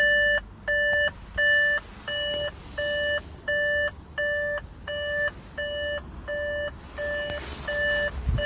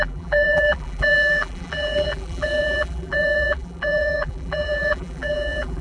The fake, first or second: second